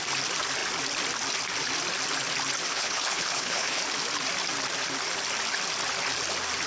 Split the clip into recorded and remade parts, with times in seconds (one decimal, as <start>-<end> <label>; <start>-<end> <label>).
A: 0.0-2.7 recorded; 2.7-3.8 remade; 3.8-6.7 recorded